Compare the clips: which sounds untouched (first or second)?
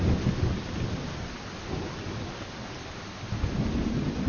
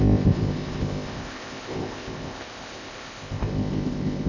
first